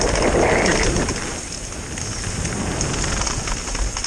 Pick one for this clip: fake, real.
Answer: real